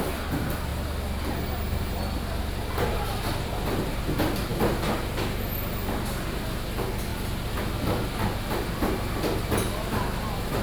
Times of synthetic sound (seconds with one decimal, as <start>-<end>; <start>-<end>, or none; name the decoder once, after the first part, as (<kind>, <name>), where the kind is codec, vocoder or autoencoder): none